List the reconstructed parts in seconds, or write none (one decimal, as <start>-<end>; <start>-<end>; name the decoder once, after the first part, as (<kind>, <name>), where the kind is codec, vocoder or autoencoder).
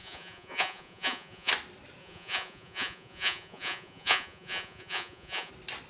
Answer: 0.0-1.5 (vocoder, Vocos); 2.0-5.5